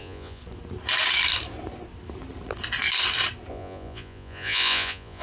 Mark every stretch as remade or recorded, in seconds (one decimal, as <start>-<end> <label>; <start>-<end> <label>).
0.0-0.4 remade; 0.4-3.5 recorded; 3.5-5.2 remade